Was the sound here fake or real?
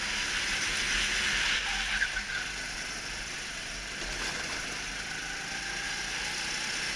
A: real